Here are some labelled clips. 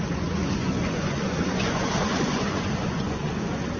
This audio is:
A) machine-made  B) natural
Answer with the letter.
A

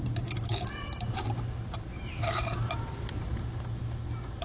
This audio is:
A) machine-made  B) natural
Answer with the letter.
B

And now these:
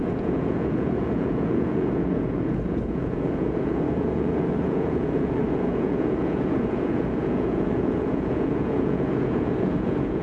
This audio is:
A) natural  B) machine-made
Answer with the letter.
B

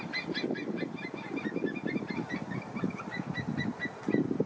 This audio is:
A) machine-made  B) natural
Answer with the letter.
B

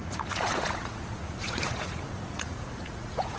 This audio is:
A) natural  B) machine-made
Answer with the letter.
B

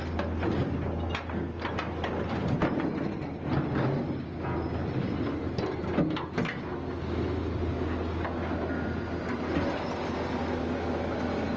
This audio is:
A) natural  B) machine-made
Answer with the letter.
A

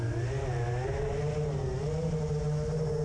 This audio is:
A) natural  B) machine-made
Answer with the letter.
A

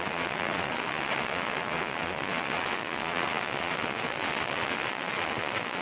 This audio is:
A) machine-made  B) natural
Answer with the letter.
A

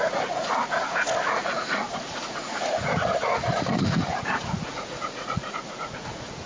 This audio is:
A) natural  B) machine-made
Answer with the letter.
B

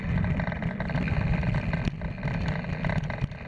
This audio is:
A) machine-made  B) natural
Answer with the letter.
B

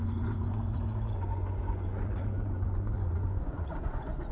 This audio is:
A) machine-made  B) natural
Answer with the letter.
A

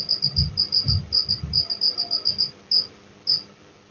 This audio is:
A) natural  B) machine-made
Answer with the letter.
A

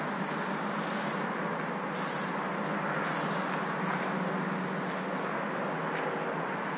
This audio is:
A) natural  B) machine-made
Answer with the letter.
A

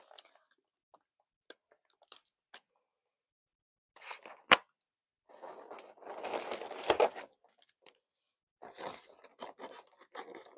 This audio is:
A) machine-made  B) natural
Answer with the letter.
B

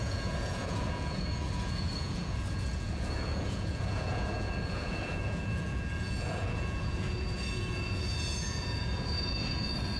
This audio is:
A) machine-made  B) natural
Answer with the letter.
A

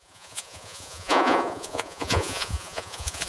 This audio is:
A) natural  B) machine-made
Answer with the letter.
B